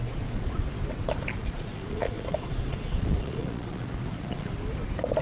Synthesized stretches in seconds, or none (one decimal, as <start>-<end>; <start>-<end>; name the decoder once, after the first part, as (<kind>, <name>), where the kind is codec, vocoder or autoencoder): 0.0-0.6 (vocoder, Vocos); 1.4-4.5